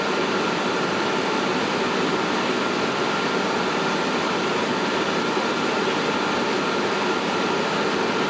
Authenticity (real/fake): fake